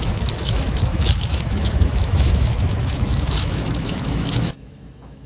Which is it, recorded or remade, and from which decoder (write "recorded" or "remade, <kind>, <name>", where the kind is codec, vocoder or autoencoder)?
remade, autoencoder, DAC-VAE